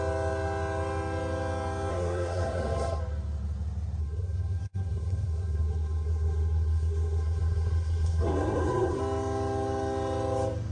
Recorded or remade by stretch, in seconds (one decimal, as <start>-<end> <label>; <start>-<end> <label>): 0.0-1.9 recorded; 1.9-3.0 remade; 3.0-4.0 recorded; 4.0-9.0 remade; 9.0-10.7 recorded